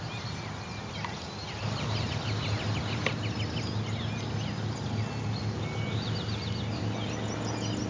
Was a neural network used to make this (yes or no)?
no